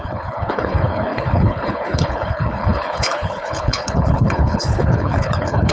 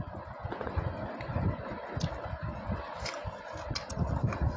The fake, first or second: first